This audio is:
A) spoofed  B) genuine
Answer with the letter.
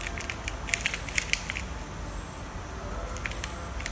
B